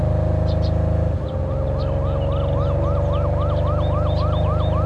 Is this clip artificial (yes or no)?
no